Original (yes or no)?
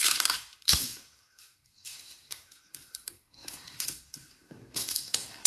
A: no